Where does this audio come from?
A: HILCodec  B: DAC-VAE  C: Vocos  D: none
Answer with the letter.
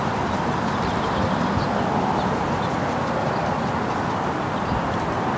D